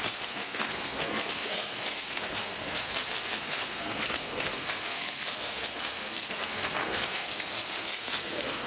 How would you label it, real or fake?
fake